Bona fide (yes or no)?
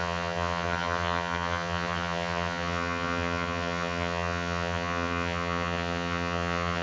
no